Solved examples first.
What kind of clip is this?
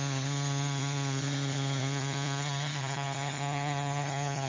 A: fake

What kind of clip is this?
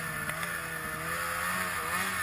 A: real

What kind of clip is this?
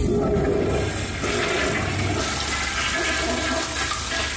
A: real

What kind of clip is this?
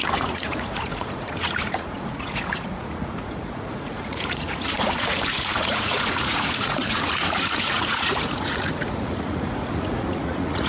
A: fake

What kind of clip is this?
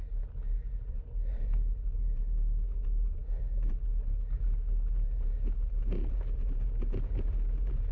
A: real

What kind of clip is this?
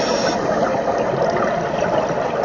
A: real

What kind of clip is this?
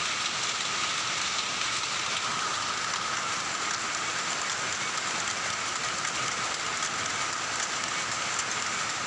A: real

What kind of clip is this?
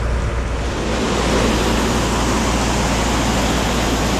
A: real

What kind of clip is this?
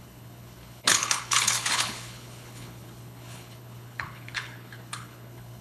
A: fake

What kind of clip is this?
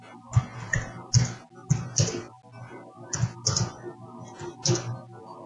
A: real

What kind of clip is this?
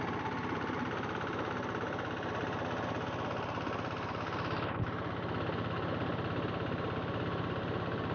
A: real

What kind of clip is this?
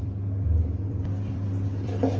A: fake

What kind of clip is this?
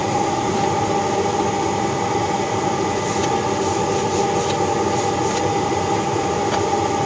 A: real